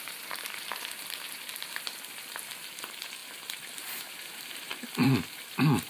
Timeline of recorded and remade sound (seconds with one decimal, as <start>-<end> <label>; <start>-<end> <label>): 0.0-5.9 remade